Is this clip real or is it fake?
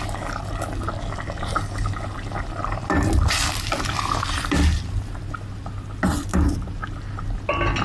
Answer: real